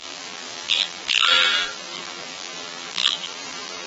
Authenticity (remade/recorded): remade